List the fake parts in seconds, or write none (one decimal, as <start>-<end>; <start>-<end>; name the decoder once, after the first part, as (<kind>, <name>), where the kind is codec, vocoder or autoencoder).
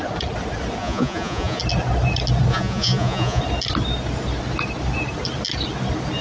0.8-1.6 (vocoder, Vocos); 2.5-3.4